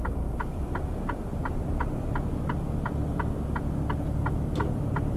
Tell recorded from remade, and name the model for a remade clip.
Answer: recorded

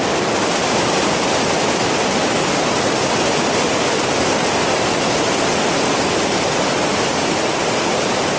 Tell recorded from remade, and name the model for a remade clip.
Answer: remade, vocoder, BigVGAN v2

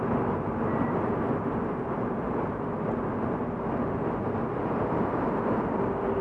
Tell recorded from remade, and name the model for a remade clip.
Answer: recorded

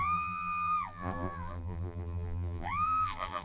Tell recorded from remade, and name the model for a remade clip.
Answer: remade, vocoder, BigVGAN v2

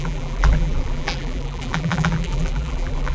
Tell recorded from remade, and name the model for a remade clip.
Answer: remade, vocoder, BigVGAN v2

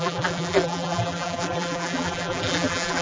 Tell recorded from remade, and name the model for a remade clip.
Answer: remade, vocoder, BigVGAN v2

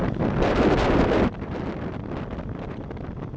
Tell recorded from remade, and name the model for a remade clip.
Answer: recorded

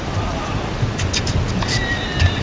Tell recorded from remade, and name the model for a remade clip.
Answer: recorded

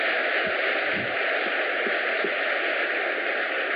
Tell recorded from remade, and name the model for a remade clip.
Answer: recorded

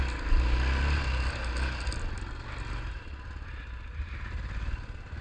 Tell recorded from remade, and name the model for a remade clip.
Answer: recorded